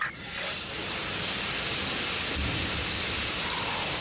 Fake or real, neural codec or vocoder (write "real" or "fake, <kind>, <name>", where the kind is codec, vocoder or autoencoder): real